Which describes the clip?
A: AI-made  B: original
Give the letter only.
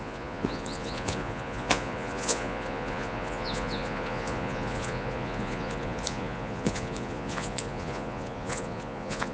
A